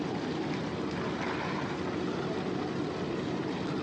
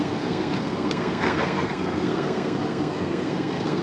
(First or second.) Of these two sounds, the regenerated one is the second